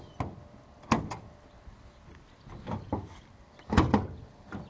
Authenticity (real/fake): real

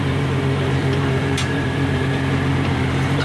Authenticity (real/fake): fake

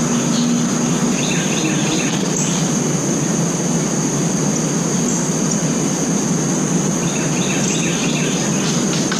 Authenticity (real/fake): real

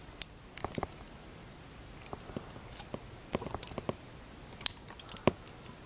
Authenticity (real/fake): real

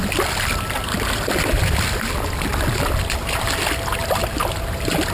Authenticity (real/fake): real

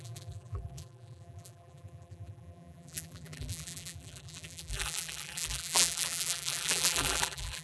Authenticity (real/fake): fake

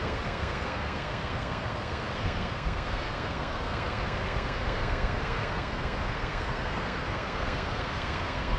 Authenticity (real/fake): fake